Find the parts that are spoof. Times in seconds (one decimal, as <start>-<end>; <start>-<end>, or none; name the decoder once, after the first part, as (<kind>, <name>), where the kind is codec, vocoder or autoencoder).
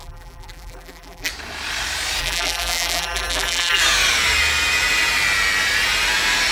0.0-1.3 (vocoder, BigVGAN v2); 2.2-3.8